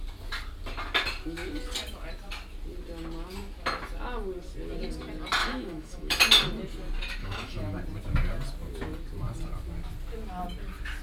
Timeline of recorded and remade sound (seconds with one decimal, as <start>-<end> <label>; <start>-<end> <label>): 0.0-5.4 recorded; 5.4-6.2 remade; 6.2-7.2 recorded; 7.2-7.8 remade; 7.8-11.0 recorded